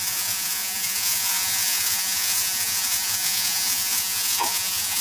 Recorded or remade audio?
remade